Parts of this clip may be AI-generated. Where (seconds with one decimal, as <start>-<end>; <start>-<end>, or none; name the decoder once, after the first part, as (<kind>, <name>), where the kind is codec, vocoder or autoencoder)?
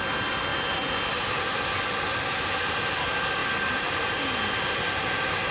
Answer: none